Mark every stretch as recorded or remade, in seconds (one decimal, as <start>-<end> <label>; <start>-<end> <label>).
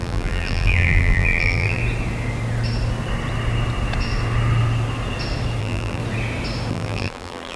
0.0-1.8 remade; 1.8-5.6 recorded; 5.6-6.0 remade; 6.0-6.7 recorded; 6.7-7.6 remade